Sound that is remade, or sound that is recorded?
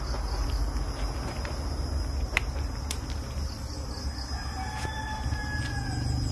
recorded